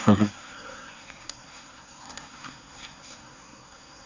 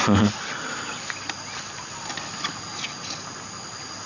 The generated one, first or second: first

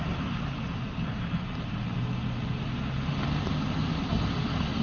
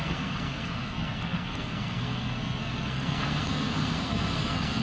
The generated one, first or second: second